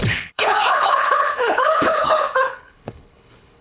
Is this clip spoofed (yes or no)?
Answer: yes